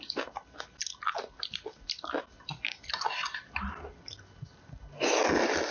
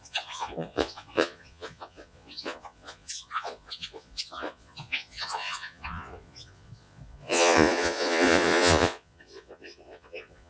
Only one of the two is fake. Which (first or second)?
second